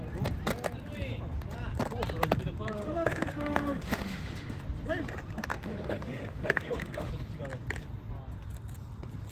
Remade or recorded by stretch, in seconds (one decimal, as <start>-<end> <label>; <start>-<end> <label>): 0.0-2.8 recorded; 2.8-4.6 remade; 4.6-5.5 recorded; 5.5-7.1 remade; 7.1-9.3 recorded